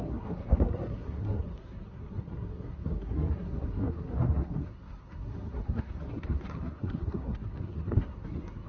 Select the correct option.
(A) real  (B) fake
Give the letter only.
B